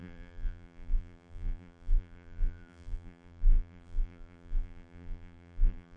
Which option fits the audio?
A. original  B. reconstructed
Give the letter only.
B